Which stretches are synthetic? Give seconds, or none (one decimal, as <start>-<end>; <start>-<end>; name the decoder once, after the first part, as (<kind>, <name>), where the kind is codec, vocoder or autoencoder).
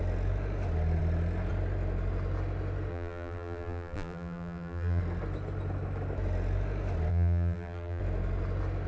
2.9-5.0 (vocoder, BigVGAN v2); 7.1-8.0